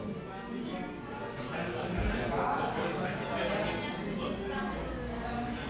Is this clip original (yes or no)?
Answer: yes